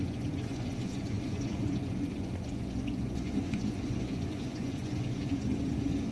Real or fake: fake